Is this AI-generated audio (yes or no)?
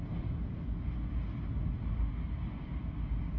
no